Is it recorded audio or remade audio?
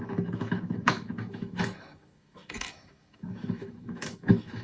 remade